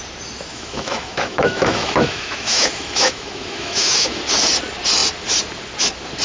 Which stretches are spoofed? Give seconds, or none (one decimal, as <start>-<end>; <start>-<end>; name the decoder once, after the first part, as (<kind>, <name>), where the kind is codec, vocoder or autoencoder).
0.5-4.2 (autoencoder, DAC-VAE)